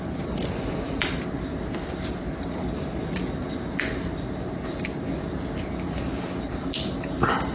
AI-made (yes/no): no